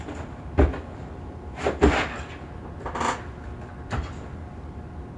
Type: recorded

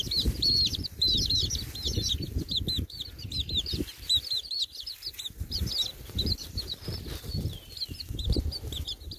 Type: remade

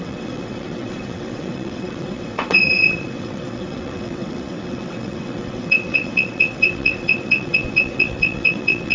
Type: remade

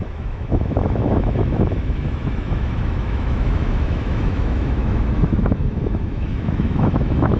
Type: remade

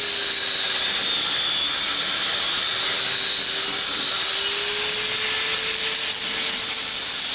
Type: recorded